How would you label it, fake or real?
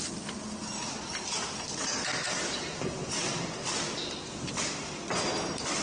real